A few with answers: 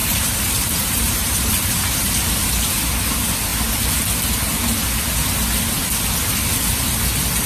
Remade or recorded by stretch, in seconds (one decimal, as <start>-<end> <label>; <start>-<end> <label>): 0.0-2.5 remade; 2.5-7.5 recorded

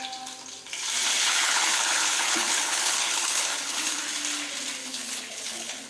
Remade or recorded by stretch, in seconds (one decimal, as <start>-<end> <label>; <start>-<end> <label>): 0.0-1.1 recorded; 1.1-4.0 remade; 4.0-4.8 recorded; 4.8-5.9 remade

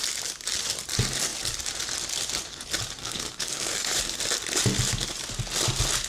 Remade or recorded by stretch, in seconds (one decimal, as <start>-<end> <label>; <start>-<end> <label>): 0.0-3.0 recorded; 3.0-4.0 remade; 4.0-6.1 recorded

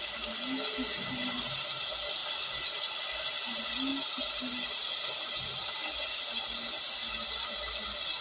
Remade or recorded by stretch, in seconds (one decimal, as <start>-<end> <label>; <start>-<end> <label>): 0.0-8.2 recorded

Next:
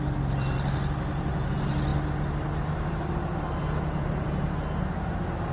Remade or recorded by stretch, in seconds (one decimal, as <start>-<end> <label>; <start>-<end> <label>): 0.0-5.5 recorded

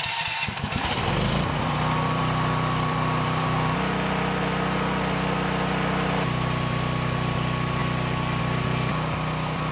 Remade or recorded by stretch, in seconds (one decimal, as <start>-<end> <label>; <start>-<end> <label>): 0.0-7.8 remade; 7.8-8.4 recorded; 8.4-9.7 remade

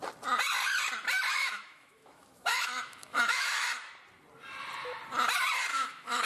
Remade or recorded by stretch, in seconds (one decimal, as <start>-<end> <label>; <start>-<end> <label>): 0.0-1.3 recorded; 1.3-3.7 remade; 3.7-5.7 recorded; 5.7-6.3 remade

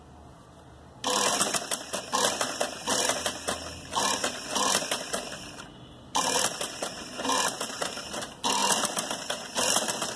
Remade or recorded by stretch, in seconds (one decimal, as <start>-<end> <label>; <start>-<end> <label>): 0.0-10.2 recorded